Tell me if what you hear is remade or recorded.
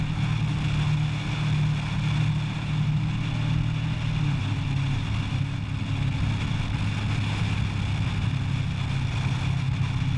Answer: recorded